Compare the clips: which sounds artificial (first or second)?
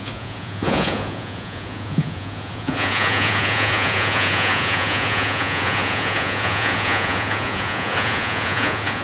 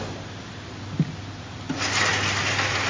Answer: first